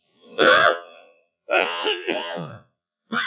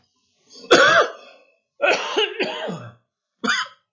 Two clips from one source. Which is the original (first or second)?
second